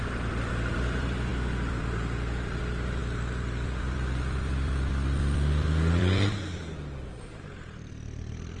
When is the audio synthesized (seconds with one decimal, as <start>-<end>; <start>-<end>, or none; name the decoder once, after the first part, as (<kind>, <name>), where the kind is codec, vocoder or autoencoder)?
0.0-8.6 (vocoder, BigVGAN v2)